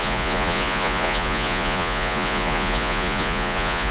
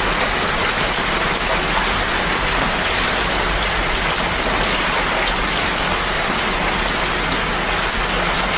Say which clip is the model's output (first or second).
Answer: first